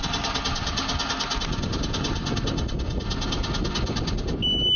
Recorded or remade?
recorded